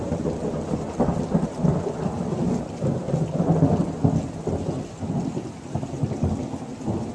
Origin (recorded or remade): recorded